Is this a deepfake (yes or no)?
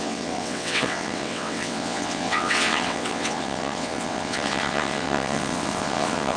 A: yes